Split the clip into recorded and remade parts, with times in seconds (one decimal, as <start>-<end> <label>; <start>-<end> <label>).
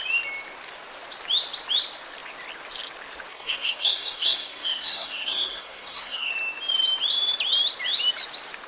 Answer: 0.0-3.3 recorded; 3.3-6.3 remade; 6.3-8.7 recorded